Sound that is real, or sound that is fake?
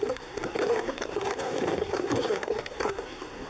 fake